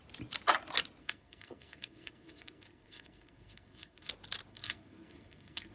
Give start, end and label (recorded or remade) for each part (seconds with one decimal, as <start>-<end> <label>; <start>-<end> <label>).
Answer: 0.0-1.0 recorded; 1.0-4.1 remade; 4.1-4.5 recorded; 4.5-5.7 remade